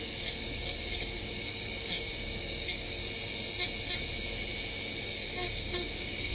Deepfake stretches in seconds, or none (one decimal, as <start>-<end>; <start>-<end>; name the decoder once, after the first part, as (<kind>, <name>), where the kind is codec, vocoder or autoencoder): 0.0-3.0 (codec, DAC); 4.9-6.3